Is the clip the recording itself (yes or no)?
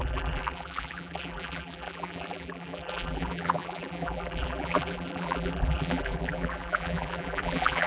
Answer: no